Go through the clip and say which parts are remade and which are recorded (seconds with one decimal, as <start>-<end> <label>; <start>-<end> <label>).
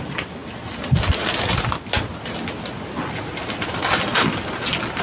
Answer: 0.0-5.0 recorded